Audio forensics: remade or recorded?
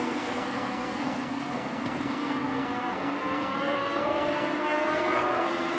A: remade